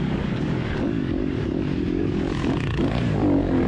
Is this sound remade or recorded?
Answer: remade